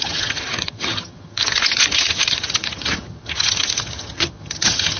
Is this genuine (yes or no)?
no